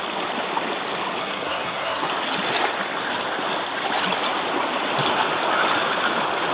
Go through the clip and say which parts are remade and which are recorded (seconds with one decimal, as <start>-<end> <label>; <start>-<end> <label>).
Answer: 0.0-1.2 recorded; 1.2-2.1 remade; 2.1-6.5 recorded